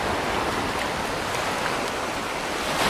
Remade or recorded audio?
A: recorded